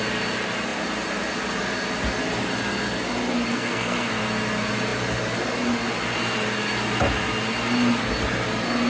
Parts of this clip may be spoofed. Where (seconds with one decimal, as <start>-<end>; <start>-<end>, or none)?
3.5-4.1